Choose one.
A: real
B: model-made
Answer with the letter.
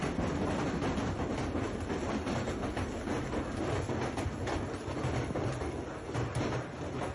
A